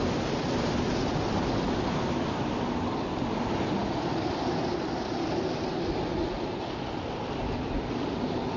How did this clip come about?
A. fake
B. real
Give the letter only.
B